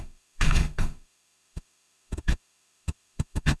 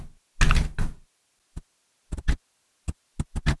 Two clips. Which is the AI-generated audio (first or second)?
first